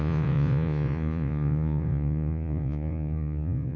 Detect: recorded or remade remade